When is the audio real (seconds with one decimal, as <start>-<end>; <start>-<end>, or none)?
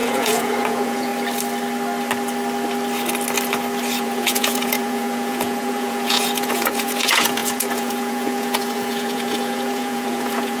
1.1-4.0